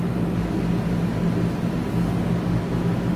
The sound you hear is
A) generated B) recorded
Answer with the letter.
B